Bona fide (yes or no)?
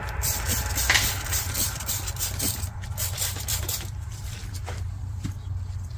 no